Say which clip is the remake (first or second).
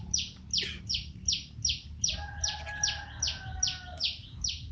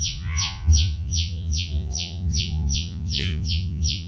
second